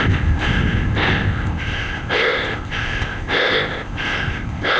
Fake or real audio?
fake